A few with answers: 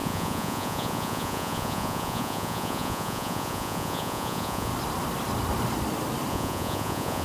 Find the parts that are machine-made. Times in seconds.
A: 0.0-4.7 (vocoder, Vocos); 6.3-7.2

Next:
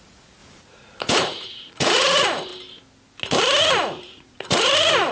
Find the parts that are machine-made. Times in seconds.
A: 0.0-2.5 (vocoder, Vocos); 3.6-5.1

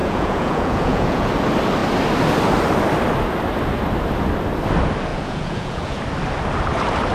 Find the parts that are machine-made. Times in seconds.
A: 0.0-1.3 (vocoder, Vocos); 5.1-6.0

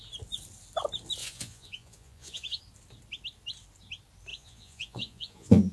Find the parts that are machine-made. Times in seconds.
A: 1.2-2.6 (vocoder, Vocos); 4.3-5.7

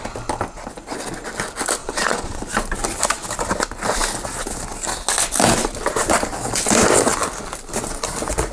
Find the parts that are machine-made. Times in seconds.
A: 1.8-2.4 (vocoder, Vocos)

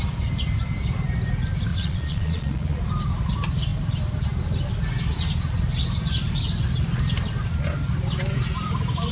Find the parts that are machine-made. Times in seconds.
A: 1.7-2.8 (vocoder, Vocos)